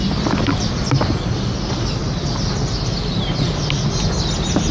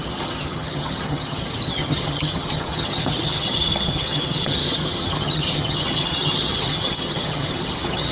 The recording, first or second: first